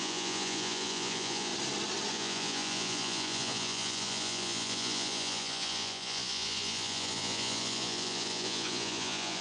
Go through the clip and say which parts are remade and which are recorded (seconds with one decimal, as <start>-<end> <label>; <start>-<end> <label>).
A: 0.0-1.5 remade; 1.5-2.1 recorded; 2.1-9.4 remade